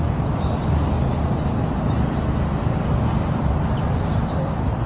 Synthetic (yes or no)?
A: no